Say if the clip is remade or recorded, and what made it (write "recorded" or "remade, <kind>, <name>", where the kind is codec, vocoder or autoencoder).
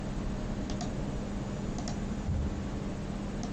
recorded